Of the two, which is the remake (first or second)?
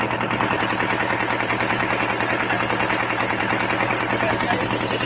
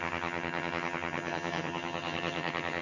second